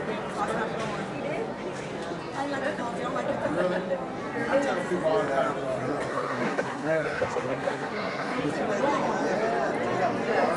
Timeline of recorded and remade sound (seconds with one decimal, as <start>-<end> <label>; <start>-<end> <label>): 0.0-6.1 recorded; 6.1-8.5 remade; 8.5-10.6 recorded